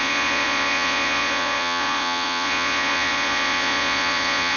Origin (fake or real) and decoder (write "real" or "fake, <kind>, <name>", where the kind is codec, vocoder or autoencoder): fake, vocoder, Vocos